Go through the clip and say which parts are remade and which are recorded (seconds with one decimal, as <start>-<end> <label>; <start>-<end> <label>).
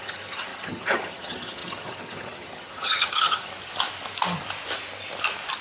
0.0-3.5 remade; 3.5-5.6 recorded